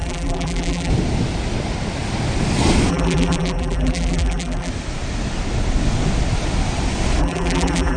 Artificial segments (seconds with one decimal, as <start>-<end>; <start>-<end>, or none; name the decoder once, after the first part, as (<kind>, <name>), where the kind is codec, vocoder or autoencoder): 0.0-0.9 (vocoder, BigVGAN v2); 2.9-4.7; 7.2-8.0